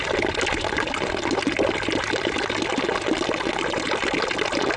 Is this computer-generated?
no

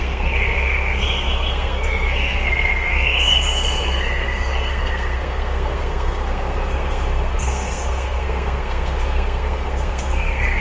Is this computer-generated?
yes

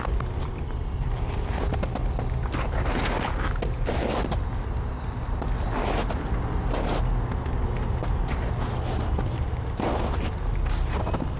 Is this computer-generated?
no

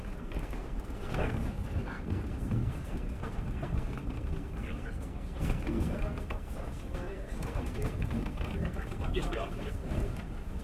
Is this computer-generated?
yes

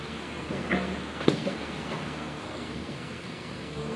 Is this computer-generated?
yes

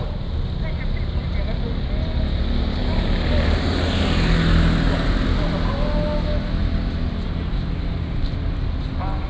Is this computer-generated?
no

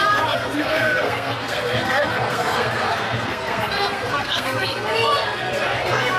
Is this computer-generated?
yes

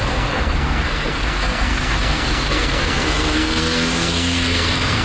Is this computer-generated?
yes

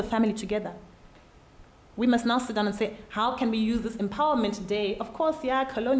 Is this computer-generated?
no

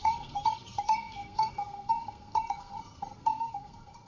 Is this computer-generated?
yes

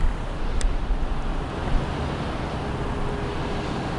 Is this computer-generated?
no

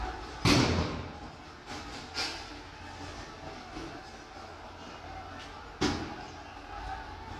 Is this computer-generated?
no